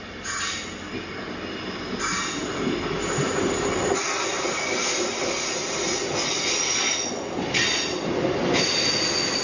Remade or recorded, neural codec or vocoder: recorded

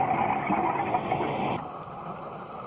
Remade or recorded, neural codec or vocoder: recorded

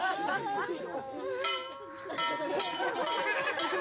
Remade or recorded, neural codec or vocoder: recorded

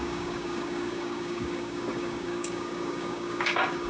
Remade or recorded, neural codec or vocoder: remade, codec, DAC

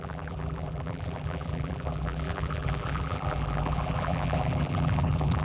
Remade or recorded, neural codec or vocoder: remade, vocoder, BigVGAN v2